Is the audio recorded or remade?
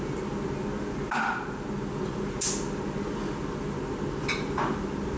recorded